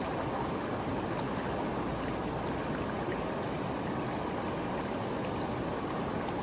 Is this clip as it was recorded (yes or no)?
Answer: yes